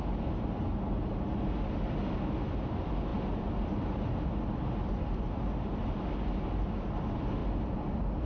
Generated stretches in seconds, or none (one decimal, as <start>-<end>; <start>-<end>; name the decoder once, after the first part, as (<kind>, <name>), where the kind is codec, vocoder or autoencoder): none